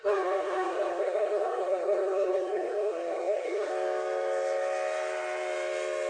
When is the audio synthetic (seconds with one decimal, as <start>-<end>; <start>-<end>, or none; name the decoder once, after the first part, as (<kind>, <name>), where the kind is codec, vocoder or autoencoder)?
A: 0.0-3.7 (codec, SNAC)